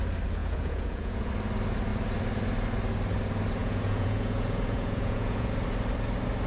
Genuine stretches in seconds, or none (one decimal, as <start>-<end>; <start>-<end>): 0.0-0.4; 1.3-3.6; 5.5-6.5